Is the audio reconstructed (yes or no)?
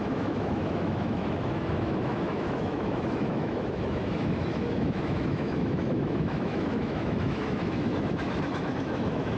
yes